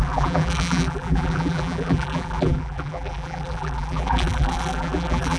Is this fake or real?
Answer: fake